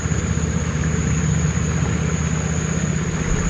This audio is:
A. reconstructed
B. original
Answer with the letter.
B